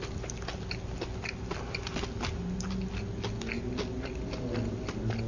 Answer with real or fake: real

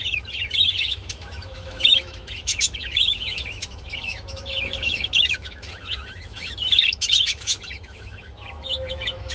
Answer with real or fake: fake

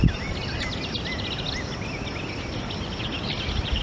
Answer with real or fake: real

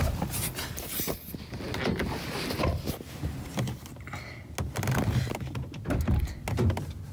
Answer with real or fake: real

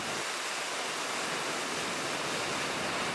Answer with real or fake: real